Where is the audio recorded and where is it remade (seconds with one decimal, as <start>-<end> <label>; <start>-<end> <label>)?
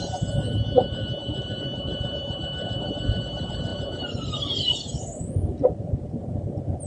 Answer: 0.0-6.9 remade